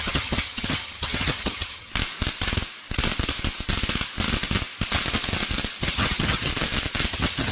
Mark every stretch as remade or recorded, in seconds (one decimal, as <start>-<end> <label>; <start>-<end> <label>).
0.0-1.9 remade; 1.9-5.8 recorded; 5.8-6.5 remade; 6.5-7.1 recorded; 7.1-7.5 remade